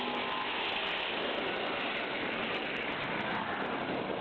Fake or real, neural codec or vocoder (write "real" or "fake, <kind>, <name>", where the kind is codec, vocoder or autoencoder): real